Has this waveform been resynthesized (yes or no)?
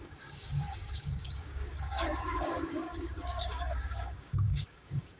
yes